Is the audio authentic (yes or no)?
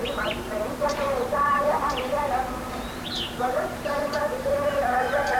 no